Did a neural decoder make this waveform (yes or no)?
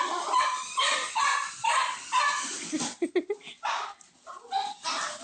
no